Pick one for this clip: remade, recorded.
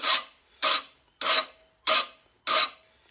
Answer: recorded